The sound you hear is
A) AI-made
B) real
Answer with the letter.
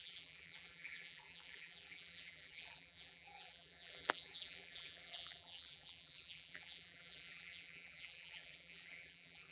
A